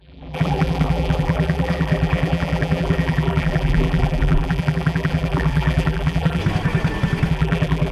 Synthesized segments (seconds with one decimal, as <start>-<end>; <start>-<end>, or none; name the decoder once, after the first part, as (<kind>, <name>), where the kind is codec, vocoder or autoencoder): 0.0-6.4 (vocoder, BigVGAN v2); 7.3-7.9